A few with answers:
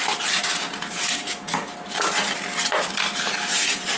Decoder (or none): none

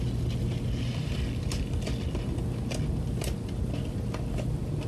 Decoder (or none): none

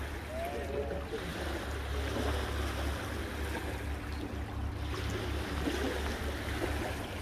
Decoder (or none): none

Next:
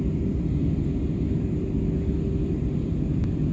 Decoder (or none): none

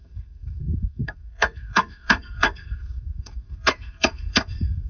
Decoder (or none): codec, SNAC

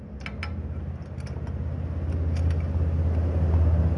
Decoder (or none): none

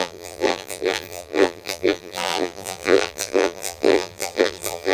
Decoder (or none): vocoder, BigVGAN v2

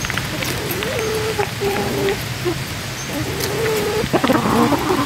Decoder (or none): none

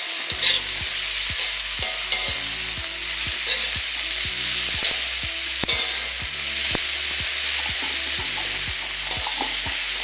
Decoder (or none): none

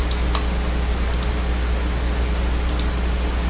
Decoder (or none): none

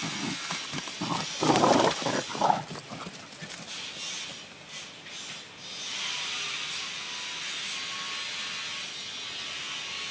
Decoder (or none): none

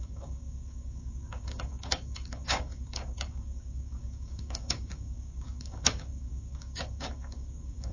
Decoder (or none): codec, DAC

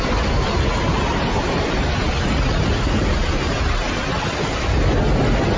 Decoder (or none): none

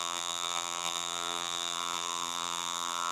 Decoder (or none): vocoder, BigVGAN v2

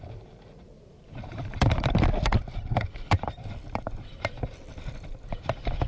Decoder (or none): vocoder, BigVGAN v2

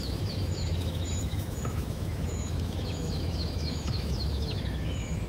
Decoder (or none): autoencoder, DAC-VAE